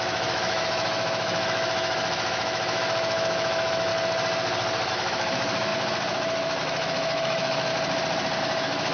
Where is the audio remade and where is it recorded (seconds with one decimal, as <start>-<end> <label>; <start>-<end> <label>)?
0.0-3.9 remade; 3.9-4.9 recorded; 4.9-5.7 remade; 5.7-6.6 recorded; 6.6-7.7 remade; 7.7-8.4 recorded; 8.4-8.9 remade